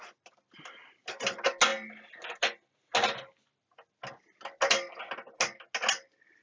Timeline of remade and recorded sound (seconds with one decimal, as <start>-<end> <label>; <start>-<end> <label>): 0.0-6.4 recorded